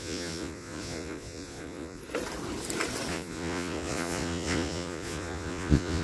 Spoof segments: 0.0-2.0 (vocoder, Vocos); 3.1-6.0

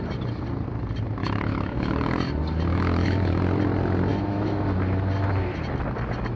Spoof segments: 1.2-2.2 (autoencoder, DAC-VAE); 2.7-3.4; 4.1-4.6

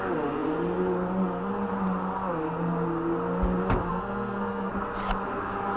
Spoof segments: 3.9-4.7 (codec, SNAC)

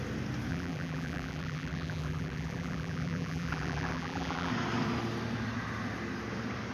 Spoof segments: 0.5-4.5 (vocoder, BigVGAN v2)

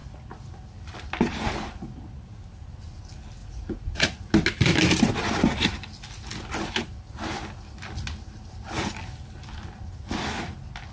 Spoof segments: 3.4-4.3 (vocoder, Vocos)

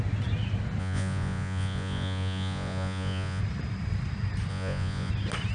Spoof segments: 0.8-3.4 (vocoder, Vocos); 4.5-5.1

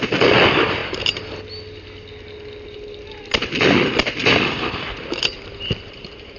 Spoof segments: 0.0-0.8 (vocoder, BigVGAN v2); 3.2-6.4